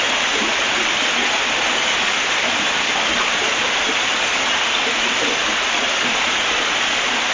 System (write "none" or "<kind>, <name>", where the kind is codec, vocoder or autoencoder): none